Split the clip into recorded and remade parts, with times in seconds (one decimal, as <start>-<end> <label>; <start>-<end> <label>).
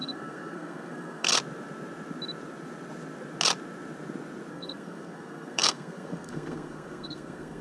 0.0-1.3 remade; 1.3-4.5 recorded; 4.5-7.6 remade